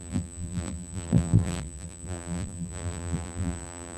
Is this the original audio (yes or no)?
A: no